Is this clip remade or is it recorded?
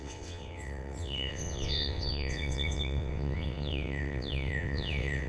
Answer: remade